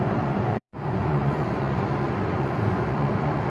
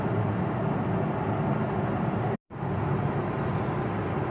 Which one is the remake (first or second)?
first